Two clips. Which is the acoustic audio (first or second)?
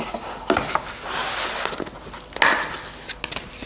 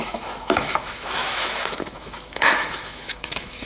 first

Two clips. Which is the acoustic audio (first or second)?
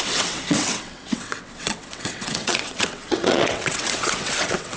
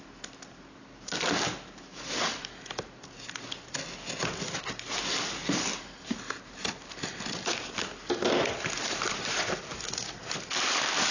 second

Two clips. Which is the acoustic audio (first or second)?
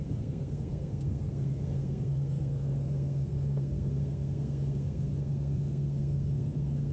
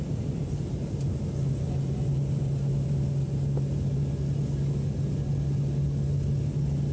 second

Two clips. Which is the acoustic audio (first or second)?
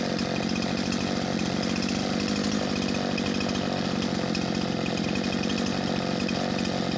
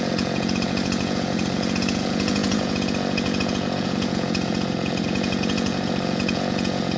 first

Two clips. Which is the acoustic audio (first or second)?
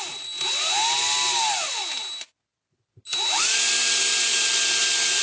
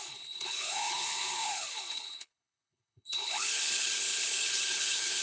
first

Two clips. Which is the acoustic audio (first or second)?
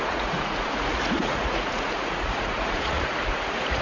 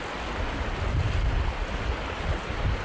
second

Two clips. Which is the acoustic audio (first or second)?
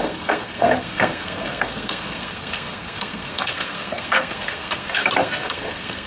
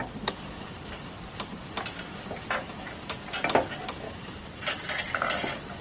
second